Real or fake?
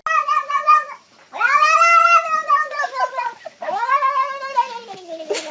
real